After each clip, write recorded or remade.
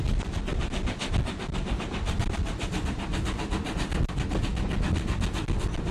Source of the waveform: recorded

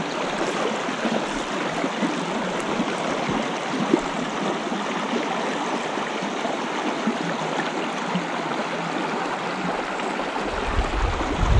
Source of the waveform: recorded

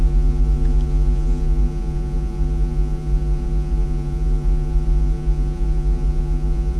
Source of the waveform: remade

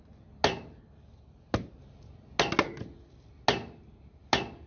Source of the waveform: recorded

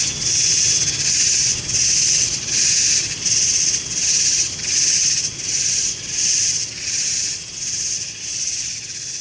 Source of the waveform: recorded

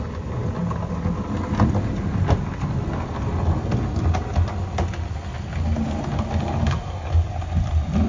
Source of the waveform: recorded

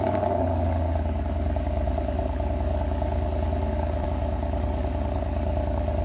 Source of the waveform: remade